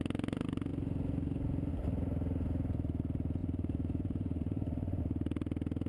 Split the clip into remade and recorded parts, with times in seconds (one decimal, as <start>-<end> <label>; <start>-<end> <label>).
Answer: 0.0-3.4 recorded; 3.4-5.0 remade; 5.0-5.9 recorded